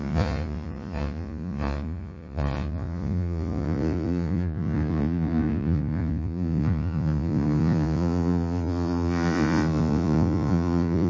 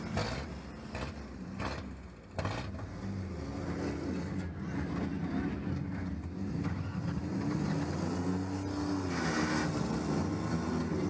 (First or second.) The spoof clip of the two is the first